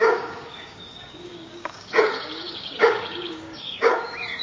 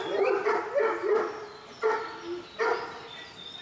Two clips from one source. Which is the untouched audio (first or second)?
second